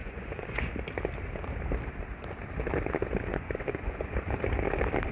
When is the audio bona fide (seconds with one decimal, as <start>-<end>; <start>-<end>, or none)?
0.7-3.3; 4.3-5.1